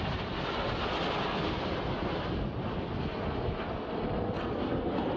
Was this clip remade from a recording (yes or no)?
no